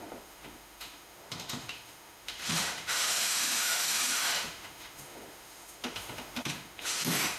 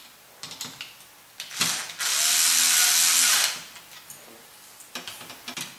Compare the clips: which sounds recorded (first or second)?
second